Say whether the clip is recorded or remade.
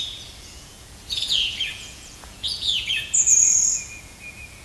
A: remade